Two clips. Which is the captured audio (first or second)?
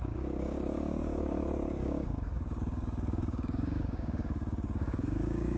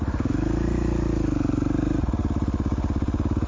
second